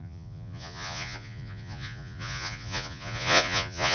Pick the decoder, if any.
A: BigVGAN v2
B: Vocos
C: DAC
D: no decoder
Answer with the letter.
B